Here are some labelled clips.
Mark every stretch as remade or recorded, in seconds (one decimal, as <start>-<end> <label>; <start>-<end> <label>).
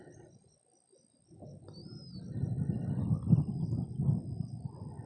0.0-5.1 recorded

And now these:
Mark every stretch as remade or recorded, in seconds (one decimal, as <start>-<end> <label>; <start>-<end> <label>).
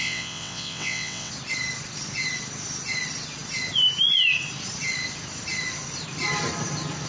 0.0-1.3 remade; 1.3-7.1 recorded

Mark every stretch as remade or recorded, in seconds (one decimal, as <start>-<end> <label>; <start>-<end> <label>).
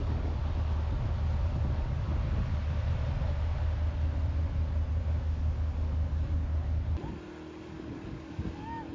0.0-0.4 remade; 0.4-1.5 recorded; 1.5-2.2 remade; 2.2-5.0 recorded; 5.0-6.5 remade; 6.5-7.7 recorded; 7.7-8.9 remade